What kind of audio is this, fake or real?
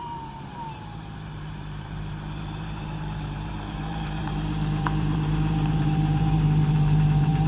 fake